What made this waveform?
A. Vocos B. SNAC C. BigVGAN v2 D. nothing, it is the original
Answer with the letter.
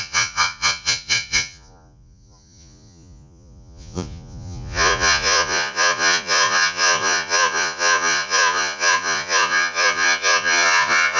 A